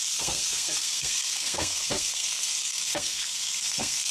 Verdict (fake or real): fake